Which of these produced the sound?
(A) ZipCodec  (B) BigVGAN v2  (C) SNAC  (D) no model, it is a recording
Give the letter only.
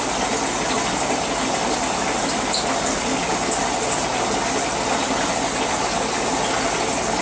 D